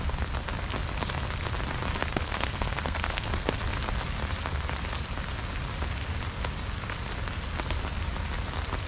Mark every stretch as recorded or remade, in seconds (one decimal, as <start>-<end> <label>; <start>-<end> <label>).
0.0-2.1 recorded; 2.1-3.6 remade; 3.6-8.9 recorded